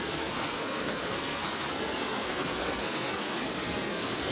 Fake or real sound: fake